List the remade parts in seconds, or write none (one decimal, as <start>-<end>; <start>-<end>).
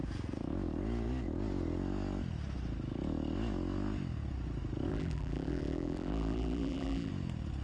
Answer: 4.9-7.1